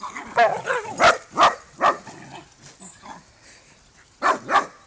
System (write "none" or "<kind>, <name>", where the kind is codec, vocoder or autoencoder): none